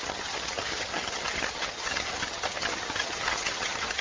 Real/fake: fake